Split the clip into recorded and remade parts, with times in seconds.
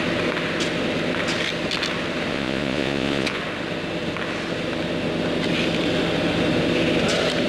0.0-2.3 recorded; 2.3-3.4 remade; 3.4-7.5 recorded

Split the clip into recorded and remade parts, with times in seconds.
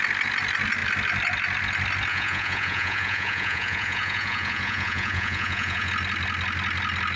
0.0-2.1 recorded; 2.1-5.9 remade; 5.9-7.2 recorded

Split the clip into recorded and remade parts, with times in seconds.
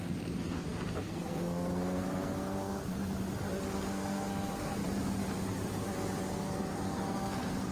0.0-3.0 remade; 3.0-3.9 recorded; 3.9-4.8 remade; 4.8-6.3 recorded; 6.3-7.7 remade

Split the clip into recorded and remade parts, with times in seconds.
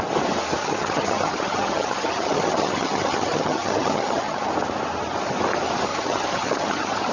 0.0-0.6 recorded; 0.6-4.5 remade; 4.5-5.9 recorded; 5.9-7.1 remade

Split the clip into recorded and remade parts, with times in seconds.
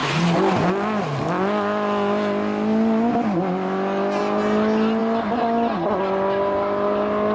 0.0-7.3 recorded